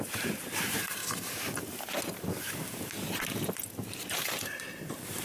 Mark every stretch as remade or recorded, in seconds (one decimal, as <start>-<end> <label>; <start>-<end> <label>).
0.0-1.0 remade; 1.0-4.1 recorded; 4.1-5.2 remade